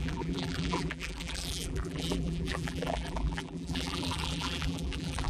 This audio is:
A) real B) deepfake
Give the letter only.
B